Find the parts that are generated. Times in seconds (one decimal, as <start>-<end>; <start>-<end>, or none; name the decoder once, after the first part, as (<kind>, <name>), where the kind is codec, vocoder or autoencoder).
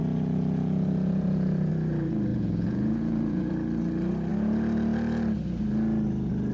0.0-1.7 (vocoder, Vocos); 2.3-3.5